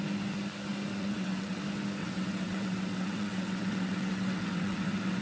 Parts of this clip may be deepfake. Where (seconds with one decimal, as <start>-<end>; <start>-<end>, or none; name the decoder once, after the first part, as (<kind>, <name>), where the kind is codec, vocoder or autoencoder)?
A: 0.9-1.6 (vocoder, WaveNeXt); 2.0-5.2